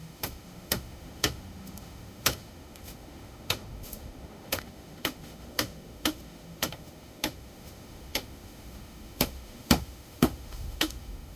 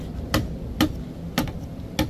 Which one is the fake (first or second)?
first